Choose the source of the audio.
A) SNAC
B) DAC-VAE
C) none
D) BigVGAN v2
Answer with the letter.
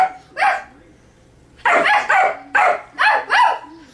C